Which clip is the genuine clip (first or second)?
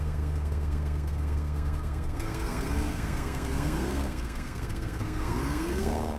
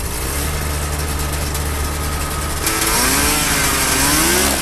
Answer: second